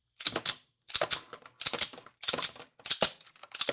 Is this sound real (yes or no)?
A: yes